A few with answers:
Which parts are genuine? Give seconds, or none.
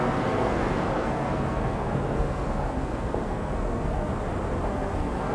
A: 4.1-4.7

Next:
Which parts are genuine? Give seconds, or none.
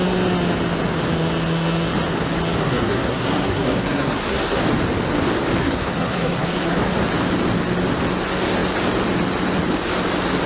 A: 0.0-2.6; 4.6-5.6; 6.9-10.5